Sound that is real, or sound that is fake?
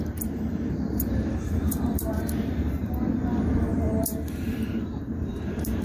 fake